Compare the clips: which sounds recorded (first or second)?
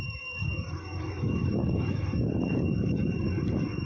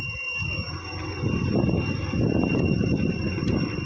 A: second